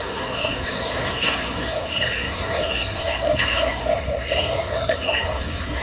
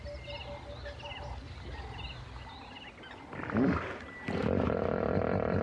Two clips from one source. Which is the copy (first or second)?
first